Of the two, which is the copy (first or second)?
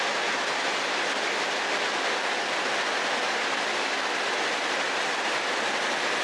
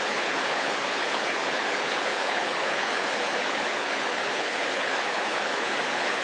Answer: second